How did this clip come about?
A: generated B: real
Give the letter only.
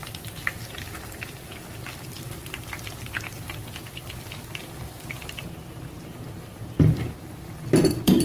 A